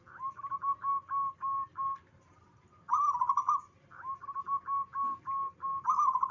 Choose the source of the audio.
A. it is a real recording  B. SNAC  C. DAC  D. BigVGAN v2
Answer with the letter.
A